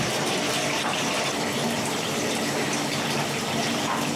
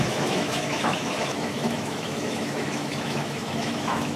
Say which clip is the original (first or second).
first